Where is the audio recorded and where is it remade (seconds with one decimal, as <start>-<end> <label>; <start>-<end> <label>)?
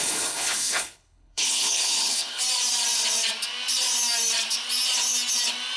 0.0-2.4 remade; 2.4-5.8 recorded